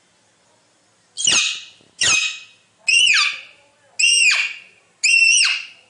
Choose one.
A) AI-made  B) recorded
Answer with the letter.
B